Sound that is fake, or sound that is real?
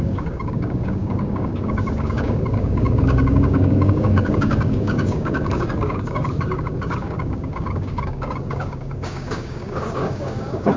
fake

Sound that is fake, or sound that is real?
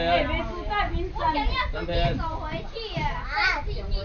real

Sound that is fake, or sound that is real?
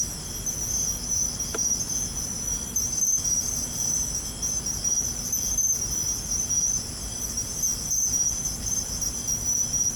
real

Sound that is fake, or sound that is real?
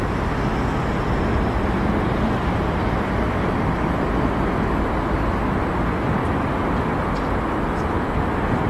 real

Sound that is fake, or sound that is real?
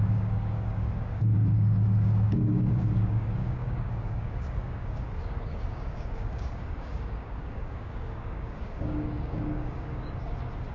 fake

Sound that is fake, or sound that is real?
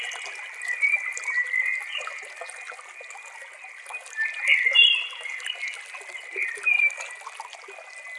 real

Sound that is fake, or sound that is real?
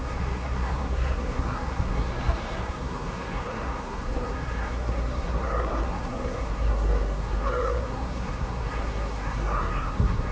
fake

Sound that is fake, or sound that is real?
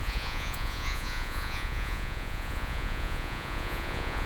fake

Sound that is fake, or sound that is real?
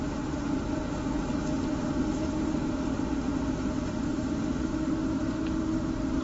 real